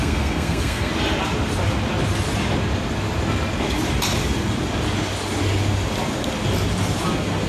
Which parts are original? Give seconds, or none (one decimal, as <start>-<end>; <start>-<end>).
0.9-7.5